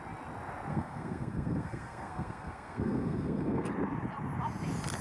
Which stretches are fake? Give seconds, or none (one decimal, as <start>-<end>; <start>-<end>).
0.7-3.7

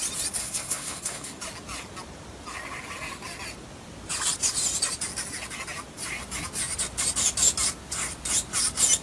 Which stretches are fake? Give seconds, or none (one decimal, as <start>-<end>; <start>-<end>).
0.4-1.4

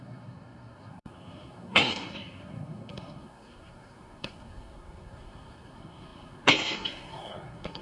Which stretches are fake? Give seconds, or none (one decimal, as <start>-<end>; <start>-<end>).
0.0-7.8

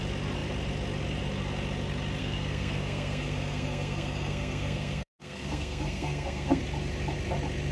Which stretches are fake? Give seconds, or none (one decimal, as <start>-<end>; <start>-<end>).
2.2-6.6

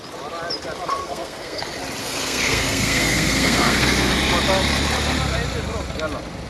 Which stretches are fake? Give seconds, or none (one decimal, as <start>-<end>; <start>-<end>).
1.0-1.6; 2.0-4.1

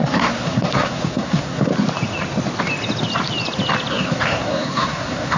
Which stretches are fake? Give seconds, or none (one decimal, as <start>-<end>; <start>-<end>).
0.0-1.7; 3.9-5.4